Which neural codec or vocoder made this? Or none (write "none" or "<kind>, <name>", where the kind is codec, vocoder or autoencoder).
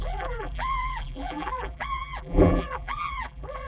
vocoder, BigVGAN v2